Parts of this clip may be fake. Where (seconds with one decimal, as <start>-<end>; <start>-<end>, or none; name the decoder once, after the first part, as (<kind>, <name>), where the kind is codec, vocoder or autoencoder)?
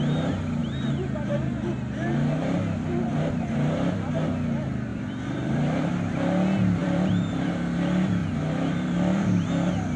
4.9-5.9 (vocoder, BigVGAN v2); 6.8-7.5; 8.2-9.5